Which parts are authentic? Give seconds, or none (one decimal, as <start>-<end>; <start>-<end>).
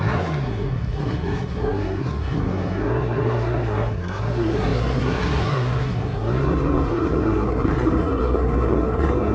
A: none